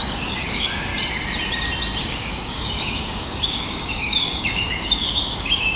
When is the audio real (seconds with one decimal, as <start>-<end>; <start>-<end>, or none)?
0.9-2.0